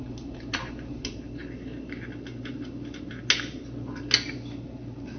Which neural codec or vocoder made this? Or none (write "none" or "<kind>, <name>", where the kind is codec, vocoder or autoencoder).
none